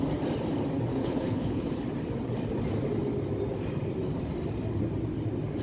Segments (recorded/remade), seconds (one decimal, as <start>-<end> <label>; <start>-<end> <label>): 0.0-0.9 recorded; 0.9-1.7 remade; 1.7-5.6 recorded